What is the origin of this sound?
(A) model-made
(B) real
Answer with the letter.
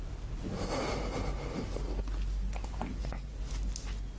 B